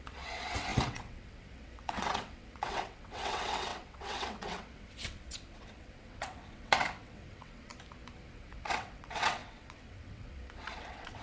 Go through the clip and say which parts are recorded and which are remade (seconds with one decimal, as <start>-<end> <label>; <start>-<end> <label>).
0.0-7.7 remade; 7.7-8.3 recorded; 8.3-11.2 remade